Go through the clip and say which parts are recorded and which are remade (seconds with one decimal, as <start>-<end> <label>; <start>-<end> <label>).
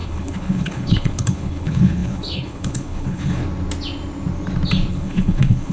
0.0-3.4 remade; 3.4-4.9 recorded; 4.9-5.7 remade